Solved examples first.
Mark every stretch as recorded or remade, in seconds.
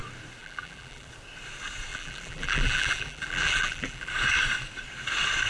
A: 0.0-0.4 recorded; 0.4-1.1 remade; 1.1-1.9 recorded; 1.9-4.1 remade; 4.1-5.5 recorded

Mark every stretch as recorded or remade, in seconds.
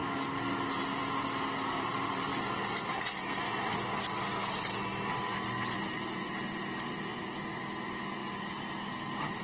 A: 0.0-9.4 recorded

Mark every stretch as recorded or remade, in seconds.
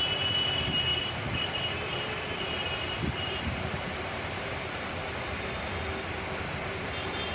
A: 0.0-0.9 recorded; 0.9-4.9 remade; 4.9-7.3 recorded